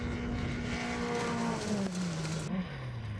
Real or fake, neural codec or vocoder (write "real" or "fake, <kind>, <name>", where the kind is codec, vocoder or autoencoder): real